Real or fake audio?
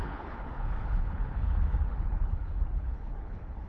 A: fake